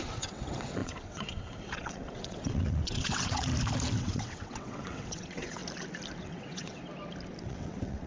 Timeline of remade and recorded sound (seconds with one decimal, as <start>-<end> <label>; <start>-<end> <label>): 0.0-3.5 remade; 3.5-4.0 recorded; 4.0-5.6 remade; 5.6-6.2 recorded; 6.2-6.8 remade; 6.8-7.4 recorded; 7.4-8.1 remade